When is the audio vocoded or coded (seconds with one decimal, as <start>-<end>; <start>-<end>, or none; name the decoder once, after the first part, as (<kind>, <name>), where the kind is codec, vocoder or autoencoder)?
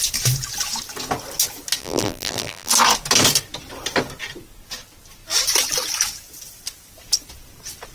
1.8-2.7 (vocoder, BigVGAN v2)